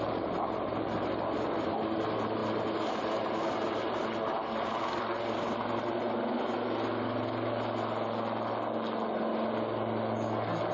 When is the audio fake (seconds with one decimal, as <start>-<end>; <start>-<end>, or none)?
none